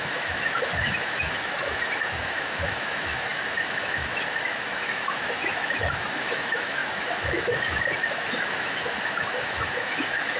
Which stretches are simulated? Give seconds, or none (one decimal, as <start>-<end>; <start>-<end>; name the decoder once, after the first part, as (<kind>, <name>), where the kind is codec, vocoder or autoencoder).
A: 0.0-10.4 (autoencoder, DAC-VAE)